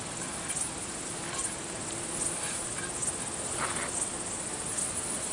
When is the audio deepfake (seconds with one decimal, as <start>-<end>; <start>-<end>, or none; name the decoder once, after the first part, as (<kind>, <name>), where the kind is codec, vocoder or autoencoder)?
none